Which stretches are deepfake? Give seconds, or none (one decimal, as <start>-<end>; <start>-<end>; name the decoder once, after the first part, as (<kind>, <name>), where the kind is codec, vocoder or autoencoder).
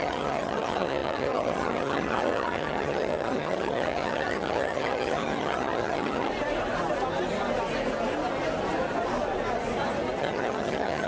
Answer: 0.0-6.3 (vocoder, HiFi-GAN); 10.2-11.1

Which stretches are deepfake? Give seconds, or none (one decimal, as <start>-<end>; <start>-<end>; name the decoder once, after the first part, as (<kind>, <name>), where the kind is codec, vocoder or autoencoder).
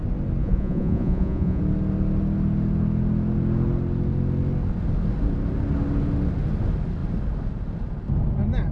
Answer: 0.4-1.6 (vocoder, Vocos)